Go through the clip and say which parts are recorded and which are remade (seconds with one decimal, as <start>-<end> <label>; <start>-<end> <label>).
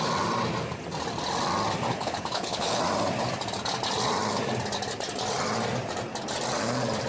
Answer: 0.0-1.9 recorded; 1.9-2.8 remade; 2.8-7.1 recorded